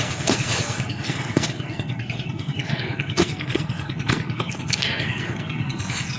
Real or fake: fake